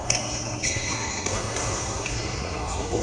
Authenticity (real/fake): fake